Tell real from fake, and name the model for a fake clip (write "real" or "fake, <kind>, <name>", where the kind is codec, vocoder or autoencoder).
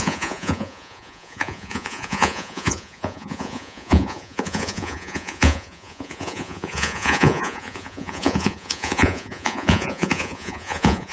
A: fake, vocoder, Vocos